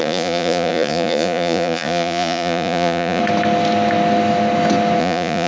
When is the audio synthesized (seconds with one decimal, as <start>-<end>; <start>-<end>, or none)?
0.0-3.2; 5.0-5.5